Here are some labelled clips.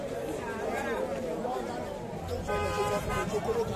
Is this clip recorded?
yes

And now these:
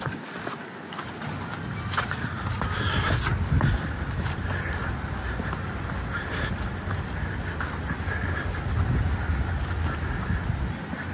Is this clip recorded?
yes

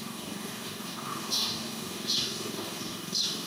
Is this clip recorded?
no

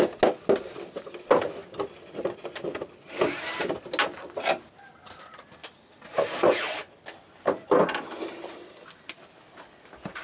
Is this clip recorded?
yes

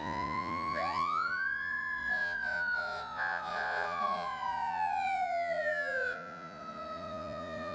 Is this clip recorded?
no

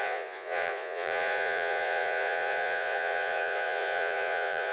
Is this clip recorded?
no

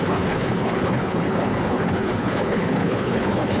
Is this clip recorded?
no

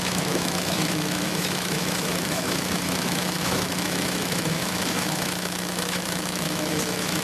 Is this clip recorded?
no